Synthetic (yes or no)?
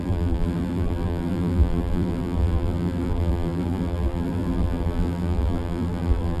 yes